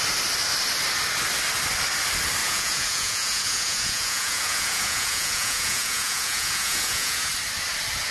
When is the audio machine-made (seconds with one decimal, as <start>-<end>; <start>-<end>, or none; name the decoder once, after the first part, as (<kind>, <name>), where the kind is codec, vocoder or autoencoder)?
2.4-7.3 (vocoder, Vocos)